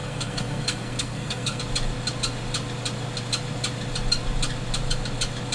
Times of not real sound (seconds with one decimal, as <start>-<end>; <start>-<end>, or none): 0.0-1.6